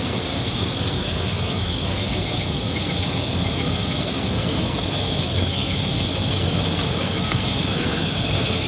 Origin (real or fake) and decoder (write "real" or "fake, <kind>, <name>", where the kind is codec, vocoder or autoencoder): fake, codec, SNAC